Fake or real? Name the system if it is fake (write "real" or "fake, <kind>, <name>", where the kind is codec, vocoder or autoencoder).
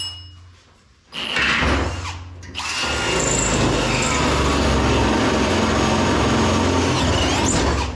real